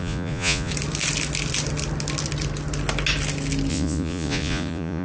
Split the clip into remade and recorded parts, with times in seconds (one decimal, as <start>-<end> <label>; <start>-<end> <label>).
0.0-0.7 remade; 0.7-3.7 recorded; 3.7-5.0 remade